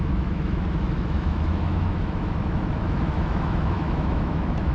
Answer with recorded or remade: remade